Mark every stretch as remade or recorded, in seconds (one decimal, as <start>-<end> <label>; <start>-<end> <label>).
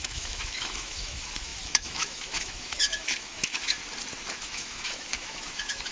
0.0-3.8 remade; 3.8-4.3 recorded; 4.3-5.9 remade